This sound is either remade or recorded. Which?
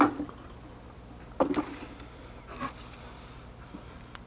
recorded